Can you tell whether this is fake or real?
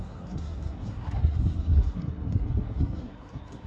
fake